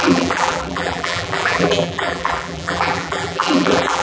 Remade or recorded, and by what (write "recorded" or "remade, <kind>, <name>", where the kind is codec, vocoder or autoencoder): remade, vocoder, BigVGAN v2